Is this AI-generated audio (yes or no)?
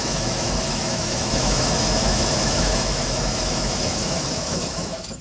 yes